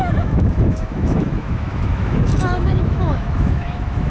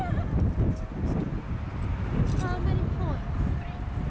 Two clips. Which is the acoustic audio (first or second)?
second